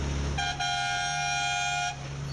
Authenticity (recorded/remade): recorded